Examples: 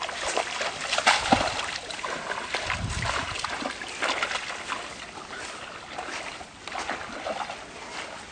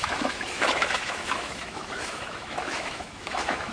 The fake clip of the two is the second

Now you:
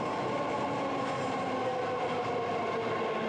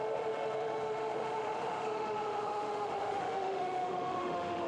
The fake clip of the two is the second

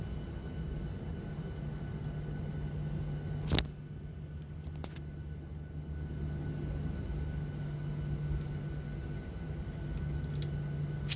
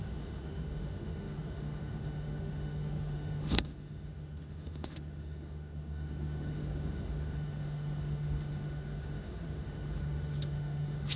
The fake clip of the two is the second